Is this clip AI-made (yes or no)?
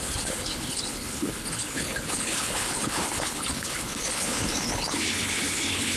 yes